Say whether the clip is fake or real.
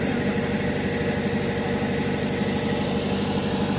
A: real